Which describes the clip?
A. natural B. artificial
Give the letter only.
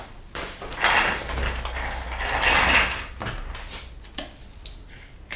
A